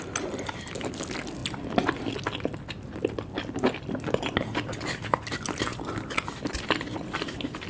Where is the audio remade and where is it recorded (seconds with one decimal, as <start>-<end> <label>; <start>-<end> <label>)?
0.0-7.7 recorded